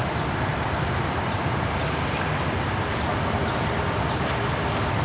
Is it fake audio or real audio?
real